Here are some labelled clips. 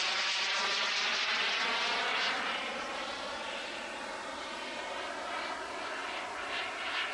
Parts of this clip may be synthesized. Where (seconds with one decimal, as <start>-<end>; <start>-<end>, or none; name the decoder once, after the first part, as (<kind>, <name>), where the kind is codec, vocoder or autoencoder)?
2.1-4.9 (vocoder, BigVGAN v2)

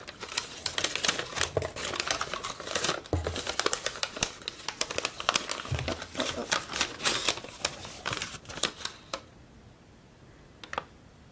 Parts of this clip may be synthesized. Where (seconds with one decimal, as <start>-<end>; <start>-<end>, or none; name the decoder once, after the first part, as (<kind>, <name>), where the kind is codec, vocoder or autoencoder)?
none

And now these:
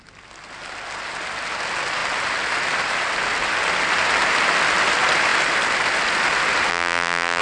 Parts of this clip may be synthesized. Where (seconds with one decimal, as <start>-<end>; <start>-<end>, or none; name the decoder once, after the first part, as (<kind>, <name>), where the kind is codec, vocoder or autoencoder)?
6.7-7.4 (vocoder, BigVGAN v2)

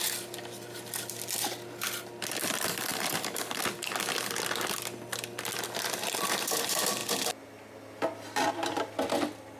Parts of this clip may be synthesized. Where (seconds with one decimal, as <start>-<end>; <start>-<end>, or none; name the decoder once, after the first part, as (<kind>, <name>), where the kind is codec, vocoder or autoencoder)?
2.9-3.6 (vocoder, BigVGAN v2)

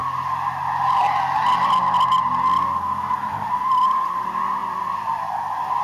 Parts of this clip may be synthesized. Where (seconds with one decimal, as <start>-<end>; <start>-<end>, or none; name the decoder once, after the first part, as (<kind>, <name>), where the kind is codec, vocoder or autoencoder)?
3.2-4.1 (vocoder, BigVGAN v2); 4.6-5.2